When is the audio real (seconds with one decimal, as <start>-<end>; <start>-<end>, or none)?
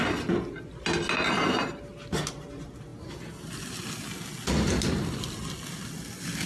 0.0-6.5